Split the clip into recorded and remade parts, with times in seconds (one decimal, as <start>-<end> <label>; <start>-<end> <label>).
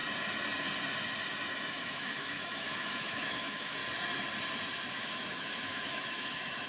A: 0.0-1.7 recorded; 1.7-3.8 remade; 3.8-4.9 recorded; 4.9-6.7 remade